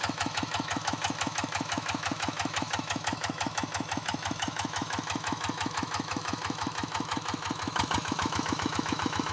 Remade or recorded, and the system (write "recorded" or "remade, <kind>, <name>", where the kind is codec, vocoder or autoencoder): remade, autoencoder, DAC-VAE